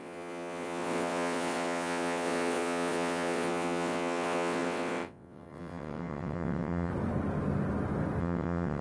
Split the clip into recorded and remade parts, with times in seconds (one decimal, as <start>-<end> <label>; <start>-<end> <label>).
0.0-6.9 remade; 6.9-8.2 recorded; 8.2-8.8 remade